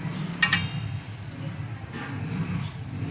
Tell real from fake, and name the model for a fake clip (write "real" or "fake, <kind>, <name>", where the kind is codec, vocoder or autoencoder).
real